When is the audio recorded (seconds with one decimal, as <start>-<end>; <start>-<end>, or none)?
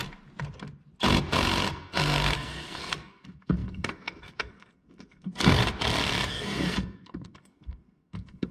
0.0-1.7; 5.6-6.3